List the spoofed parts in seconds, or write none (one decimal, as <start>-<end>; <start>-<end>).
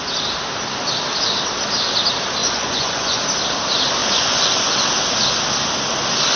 2.4-3.2; 4.0-4.7